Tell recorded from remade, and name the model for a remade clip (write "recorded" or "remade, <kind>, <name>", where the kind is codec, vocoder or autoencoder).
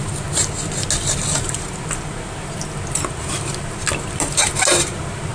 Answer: recorded